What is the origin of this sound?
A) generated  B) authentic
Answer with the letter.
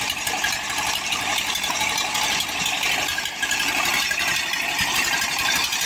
A